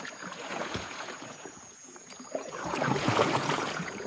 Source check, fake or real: fake